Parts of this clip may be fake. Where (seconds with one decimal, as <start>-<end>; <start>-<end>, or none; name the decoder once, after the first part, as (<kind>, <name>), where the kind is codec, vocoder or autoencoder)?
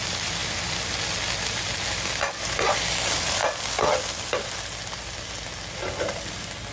none